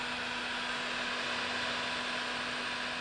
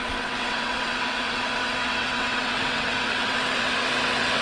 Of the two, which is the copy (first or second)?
second